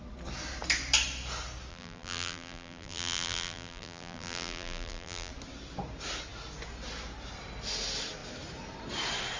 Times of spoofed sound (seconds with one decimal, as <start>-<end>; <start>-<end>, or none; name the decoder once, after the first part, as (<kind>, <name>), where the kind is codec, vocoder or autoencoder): 1.7-5.3 (vocoder, BigVGAN v2)